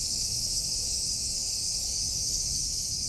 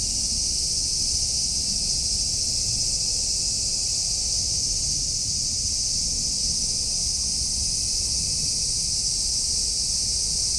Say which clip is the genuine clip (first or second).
second